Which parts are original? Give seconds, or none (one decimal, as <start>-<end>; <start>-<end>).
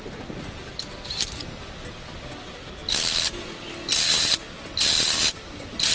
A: 0.0-5.9